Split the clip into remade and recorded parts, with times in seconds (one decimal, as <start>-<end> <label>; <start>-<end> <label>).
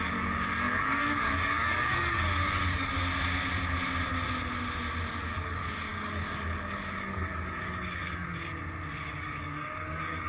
0.0-2.9 remade; 2.9-5.1 recorded; 5.1-8.5 remade; 8.5-9.0 recorded; 9.0-10.3 remade